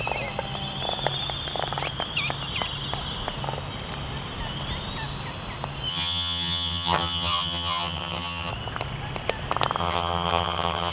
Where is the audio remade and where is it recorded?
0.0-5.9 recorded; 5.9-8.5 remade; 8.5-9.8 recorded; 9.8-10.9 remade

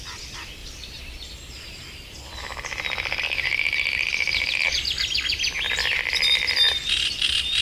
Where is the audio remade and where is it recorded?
0.0-0.6 recorded; 0.6-1.3 remade; 1.3-7.6 recorded